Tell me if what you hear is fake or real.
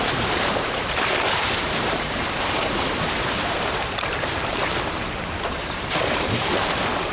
fake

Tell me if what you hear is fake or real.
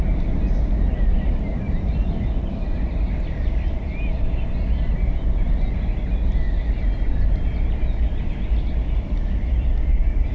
real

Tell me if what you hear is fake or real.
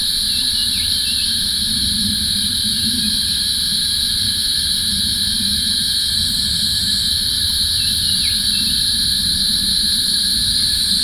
fake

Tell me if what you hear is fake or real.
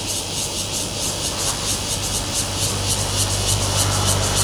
real